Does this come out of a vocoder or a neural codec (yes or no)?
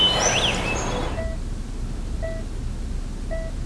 no